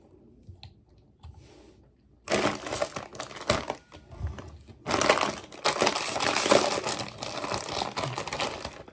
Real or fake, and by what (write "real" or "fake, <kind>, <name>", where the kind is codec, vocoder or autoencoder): real